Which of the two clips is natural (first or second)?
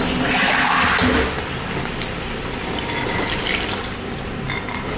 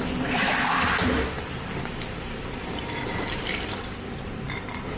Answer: first